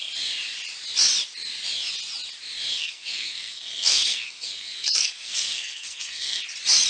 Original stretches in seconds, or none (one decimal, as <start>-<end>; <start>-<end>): 0.0-2.7; 6.4-6.9